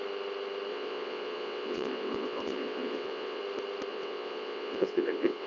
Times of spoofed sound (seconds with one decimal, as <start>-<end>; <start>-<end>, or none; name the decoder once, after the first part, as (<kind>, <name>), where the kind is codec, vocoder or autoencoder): 0.7-3.4 (vocoder, WaveNeXt); 3.9-5.5